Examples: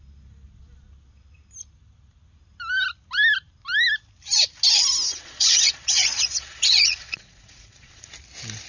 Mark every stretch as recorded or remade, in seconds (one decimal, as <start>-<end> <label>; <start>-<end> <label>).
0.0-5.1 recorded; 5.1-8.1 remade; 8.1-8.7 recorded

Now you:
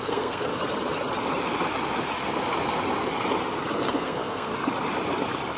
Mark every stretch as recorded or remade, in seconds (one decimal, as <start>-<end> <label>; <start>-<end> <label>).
0.0-0.5 remade; 0.5-3.9 recorded; 3.9-4.5 remade; 4.5-5.6 recorded

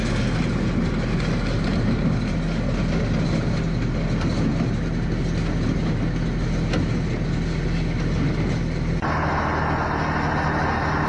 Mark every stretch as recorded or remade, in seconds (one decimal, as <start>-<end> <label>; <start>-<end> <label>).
0.0-11.1 recorded

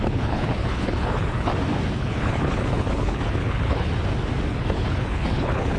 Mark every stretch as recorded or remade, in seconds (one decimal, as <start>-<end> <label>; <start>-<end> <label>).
0.0-1.5 remade; 1.5-2.0 recorded; 2.0-3.9 remade; 3.9-4.5 recorded; 4.5-5.8 remade

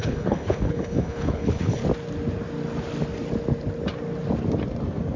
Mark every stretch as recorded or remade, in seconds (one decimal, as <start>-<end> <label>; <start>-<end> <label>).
0.0-1.8 remade; 1.8-5.2 recorded